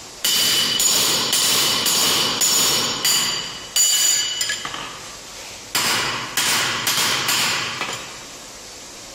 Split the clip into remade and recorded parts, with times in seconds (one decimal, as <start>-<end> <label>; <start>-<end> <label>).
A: 0.0-2.0 remade; 2.0-6.6 recorded; 6.6-9.1 remade